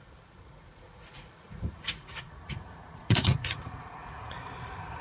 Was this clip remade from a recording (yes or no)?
yes